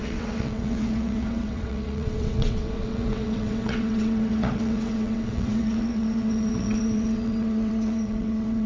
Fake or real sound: fake